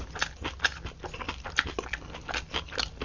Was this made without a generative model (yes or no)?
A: yes